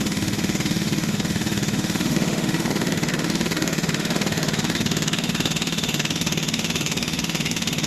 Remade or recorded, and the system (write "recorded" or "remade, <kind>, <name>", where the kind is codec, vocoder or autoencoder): remade, autoencoder, DAC-VAE